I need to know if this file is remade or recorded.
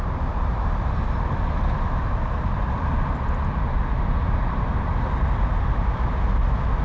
recorded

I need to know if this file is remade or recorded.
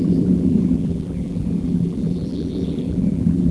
remade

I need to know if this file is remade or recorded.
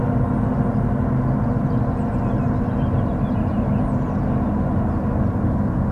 recorded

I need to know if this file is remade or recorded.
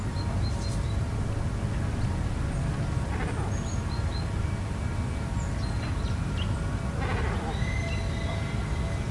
recorded